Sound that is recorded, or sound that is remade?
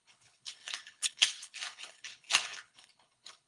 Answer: remade